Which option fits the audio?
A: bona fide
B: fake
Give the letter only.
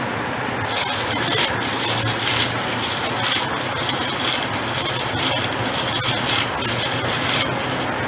A